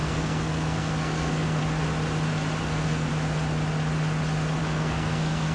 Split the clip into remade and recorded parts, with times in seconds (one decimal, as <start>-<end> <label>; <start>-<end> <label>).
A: 0.0-1.6 remade; 1.6-2.6 recorded; 2.6-3.1 remade; 3.1-4.6 recorded; 4.6-5.5 remade